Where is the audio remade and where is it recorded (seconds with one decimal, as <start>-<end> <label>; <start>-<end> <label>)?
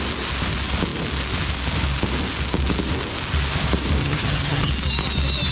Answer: 0.0-4.0 recorded; 4.0-4.7 remade; 4.7-5.5 recorded